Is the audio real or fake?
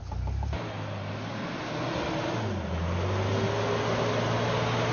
real